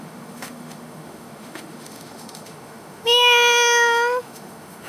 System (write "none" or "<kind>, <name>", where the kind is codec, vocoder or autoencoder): autoencoder, DAC-VAE